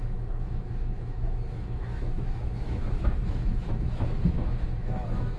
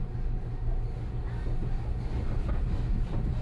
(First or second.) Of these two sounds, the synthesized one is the first